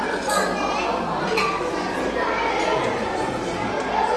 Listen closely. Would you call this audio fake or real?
real